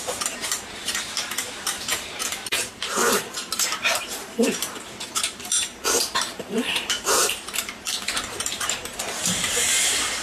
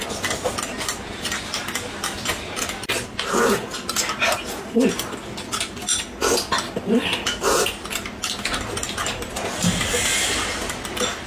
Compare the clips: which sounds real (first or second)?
second